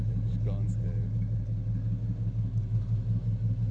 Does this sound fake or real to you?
real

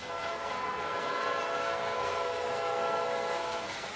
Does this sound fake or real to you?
fake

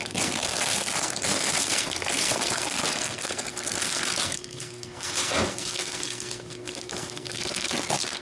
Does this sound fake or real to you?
fake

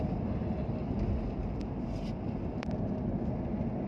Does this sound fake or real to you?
real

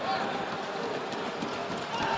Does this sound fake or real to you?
real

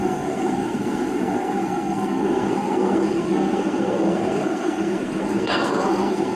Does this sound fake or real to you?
fake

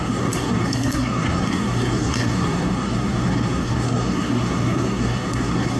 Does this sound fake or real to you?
fake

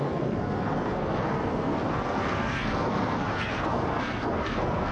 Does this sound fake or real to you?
fake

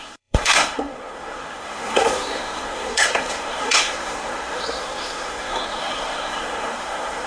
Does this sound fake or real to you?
fake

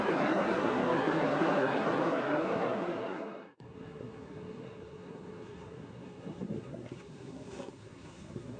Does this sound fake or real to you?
fake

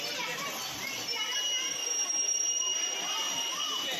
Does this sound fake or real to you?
real